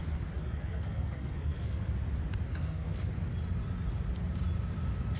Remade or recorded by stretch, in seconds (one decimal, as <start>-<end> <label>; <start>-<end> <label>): 0.0-0.4 recorded; 0.4-1.9 remade; 1.9-2.5 recorded; 2.5-3.1 remade; 3.1-5.2 recorded